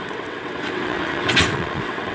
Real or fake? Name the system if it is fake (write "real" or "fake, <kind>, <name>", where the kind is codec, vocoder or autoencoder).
fake, vocoder, WaveNeXt